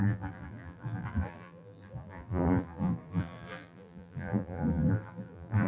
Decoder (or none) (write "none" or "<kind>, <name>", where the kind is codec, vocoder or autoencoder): vocoder, BigVGAN v2